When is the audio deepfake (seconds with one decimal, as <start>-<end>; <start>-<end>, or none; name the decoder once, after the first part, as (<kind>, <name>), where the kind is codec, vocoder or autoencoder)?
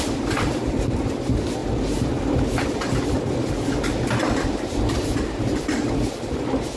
none